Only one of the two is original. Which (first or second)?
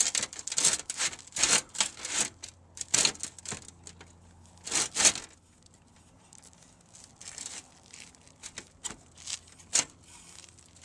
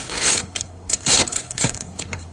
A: first